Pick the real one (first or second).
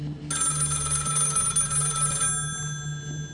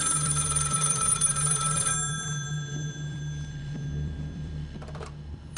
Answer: first